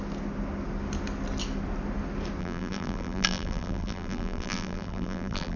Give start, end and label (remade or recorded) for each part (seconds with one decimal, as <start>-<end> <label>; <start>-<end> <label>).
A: 0.0-2.4 recorded; 2.4-5.6 remade